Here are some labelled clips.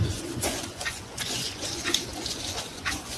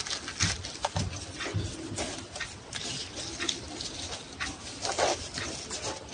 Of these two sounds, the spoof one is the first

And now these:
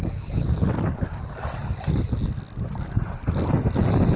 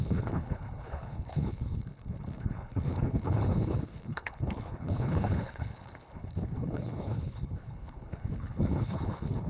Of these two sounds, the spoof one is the second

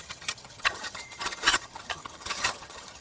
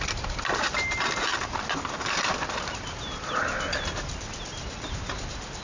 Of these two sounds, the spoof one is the first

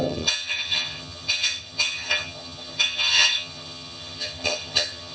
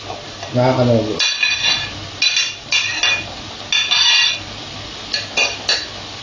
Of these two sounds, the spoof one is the first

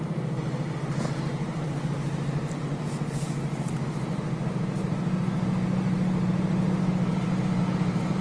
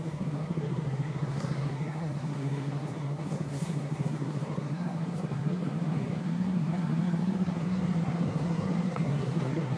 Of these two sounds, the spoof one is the second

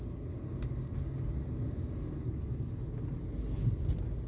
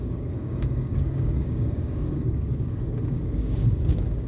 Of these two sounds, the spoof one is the second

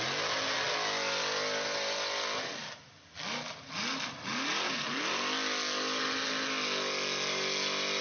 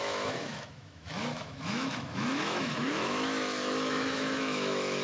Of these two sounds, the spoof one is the second